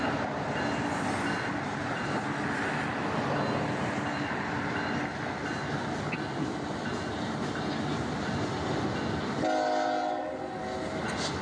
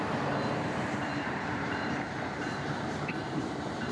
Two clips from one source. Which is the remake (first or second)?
second